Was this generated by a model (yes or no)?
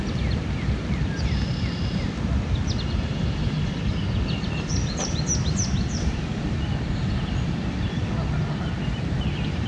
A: no